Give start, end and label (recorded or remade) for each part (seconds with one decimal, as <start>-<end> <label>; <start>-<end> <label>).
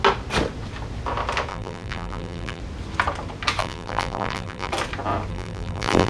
0.0-1.5 recorded; 1.5-2.6 remade; 2.6-3.6 recorded; 3.6-4.7 remade; 4.7-5.3 recorded; 5.3-6.1 remade